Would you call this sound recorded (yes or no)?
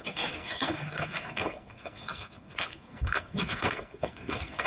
no